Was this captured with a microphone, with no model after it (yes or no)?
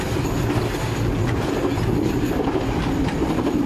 yes